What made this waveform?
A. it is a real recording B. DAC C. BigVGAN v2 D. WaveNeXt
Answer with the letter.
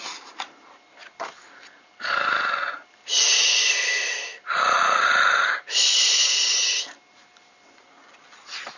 A